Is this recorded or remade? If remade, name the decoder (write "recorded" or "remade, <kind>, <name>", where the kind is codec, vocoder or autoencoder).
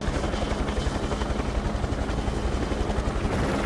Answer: recorded